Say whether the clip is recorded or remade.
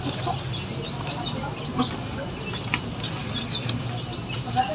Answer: recorded